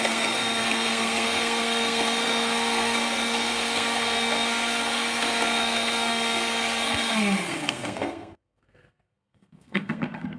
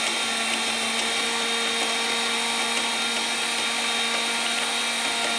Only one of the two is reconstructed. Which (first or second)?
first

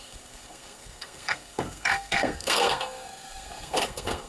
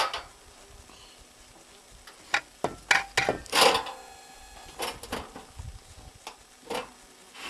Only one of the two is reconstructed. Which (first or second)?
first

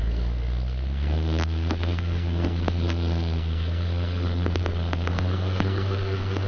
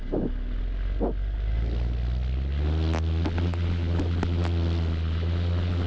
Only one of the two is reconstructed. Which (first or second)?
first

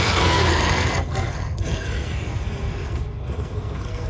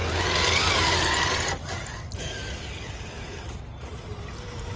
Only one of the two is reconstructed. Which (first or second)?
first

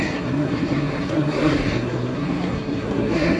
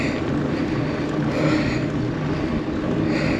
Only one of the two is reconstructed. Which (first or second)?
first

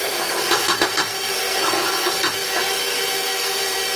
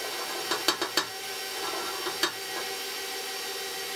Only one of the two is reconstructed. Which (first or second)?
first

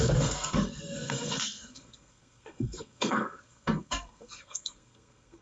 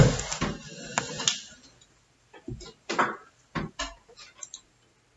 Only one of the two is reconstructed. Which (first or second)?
first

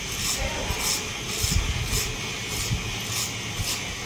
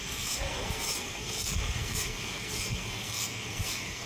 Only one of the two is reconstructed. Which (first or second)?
second